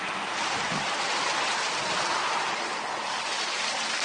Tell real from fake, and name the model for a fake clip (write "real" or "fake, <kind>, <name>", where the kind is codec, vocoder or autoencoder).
fake, vocoder, BigVGAN v2